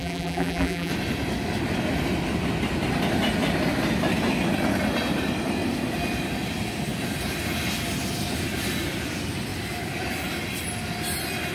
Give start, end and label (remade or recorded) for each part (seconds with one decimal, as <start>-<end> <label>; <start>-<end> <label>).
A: 0.0-0.9 remade; 0.9-11.5 recorded